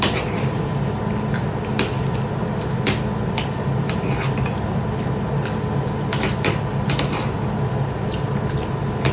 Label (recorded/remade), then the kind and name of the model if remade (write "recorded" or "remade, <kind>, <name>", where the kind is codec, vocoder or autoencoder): recorded